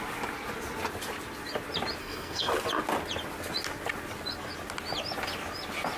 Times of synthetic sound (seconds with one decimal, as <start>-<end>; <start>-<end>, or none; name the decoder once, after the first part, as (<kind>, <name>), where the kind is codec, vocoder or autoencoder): 2.0-2.5 (codec, SNAC)